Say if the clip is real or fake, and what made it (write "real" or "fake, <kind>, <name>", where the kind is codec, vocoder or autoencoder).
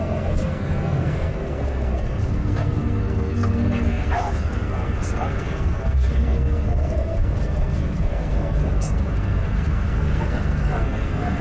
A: fake, codec, SNAC